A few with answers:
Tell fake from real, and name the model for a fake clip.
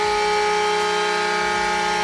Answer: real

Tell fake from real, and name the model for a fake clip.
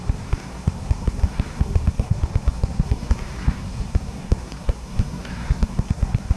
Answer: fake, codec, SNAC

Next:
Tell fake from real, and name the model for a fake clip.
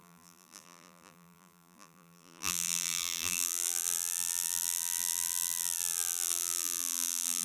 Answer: fake, vocoder, BigVGAN v2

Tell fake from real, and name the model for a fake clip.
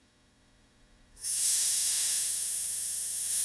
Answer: fake, autoencoder, DAC-VAE